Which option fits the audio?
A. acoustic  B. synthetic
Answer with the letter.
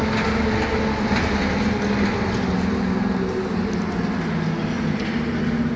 A